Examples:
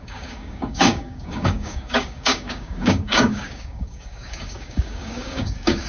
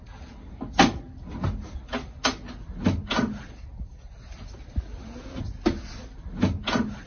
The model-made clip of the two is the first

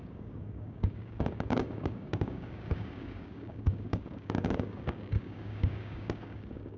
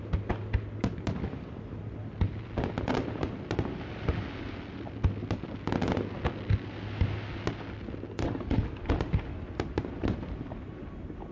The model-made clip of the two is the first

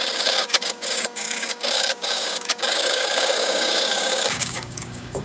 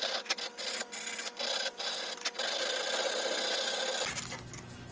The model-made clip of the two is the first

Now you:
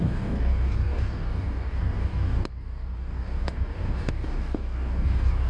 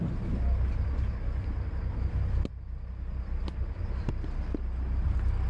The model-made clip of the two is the first